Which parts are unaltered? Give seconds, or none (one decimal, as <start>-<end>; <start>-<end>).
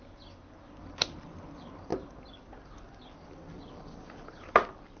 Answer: 0.0-5.0